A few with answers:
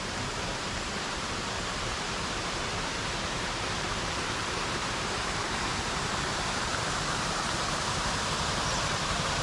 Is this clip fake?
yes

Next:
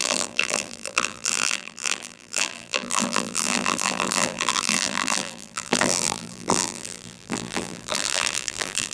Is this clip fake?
yes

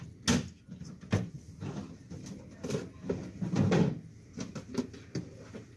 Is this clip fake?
no